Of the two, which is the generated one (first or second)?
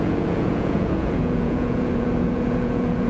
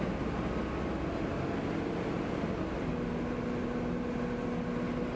first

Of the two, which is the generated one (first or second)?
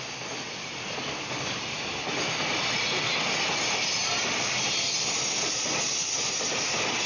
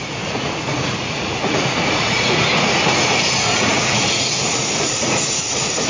second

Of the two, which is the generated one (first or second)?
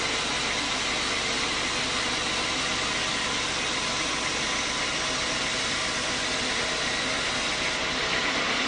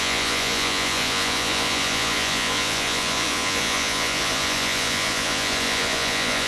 second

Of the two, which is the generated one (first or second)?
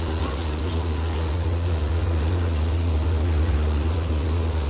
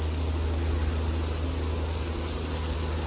first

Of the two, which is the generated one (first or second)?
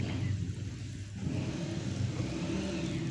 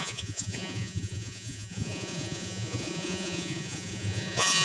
second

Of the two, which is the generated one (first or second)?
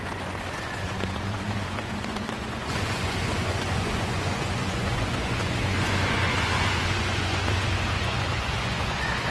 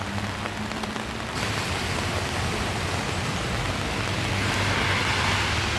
first